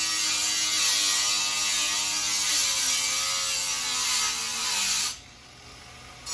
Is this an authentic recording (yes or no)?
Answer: yes